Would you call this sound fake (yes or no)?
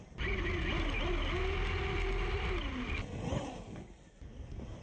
no